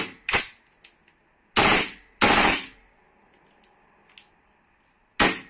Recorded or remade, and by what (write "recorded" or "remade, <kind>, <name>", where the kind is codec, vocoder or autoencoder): recorded